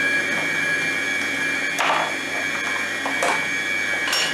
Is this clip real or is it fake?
real